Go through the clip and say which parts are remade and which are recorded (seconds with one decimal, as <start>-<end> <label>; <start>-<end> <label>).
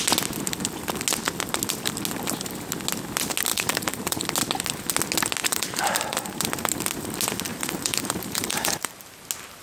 0.0-3.5 recorded; 3.5-4.2 remade; 4.2-5.4 recorded; 5.4-6.4 remade; 6.4-7.5 recorded; 7.5-9.1 remade; 9.1-9.6 recorded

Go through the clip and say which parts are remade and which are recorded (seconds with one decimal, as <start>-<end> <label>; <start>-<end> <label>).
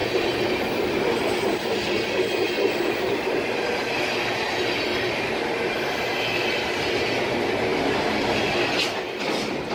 0.0-1.1 remade; 1.1-4.9 recorded; 4.9-5.7 remade; 5.7-9.7 recorded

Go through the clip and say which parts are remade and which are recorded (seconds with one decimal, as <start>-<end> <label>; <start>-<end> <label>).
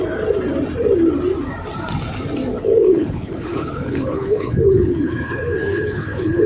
0.0-2.5 recorded; 2.5-6.5 remade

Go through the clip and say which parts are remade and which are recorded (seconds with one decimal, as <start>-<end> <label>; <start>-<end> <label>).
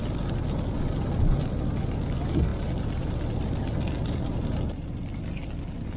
0.0-6.0 recorded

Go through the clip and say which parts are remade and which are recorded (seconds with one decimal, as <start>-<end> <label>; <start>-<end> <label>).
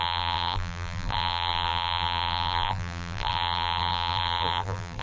0.0-5.0 remade